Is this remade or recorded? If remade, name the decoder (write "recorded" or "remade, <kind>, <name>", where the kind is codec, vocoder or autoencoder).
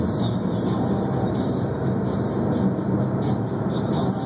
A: recorded